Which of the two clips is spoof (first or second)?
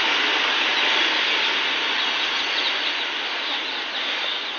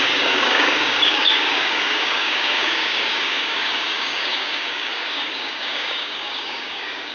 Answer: second